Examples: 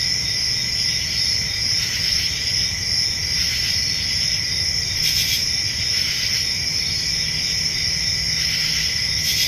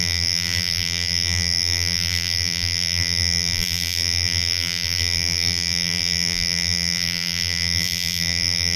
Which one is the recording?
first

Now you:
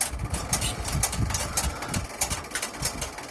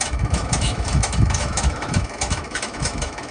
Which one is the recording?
first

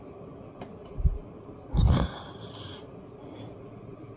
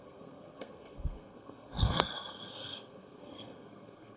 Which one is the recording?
first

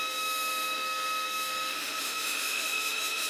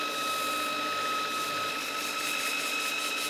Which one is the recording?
second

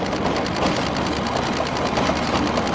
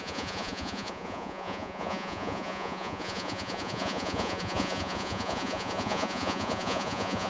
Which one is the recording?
first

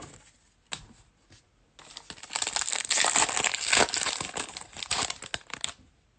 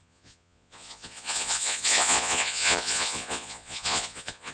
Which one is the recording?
first